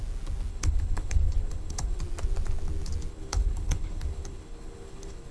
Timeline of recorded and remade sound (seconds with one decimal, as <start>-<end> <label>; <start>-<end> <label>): 0.0-0.5 recorded; 0.5-2.0 remade; 2.0-3.1 recorded; 3.1-5.3 remade